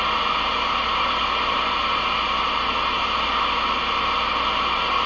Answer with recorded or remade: recorded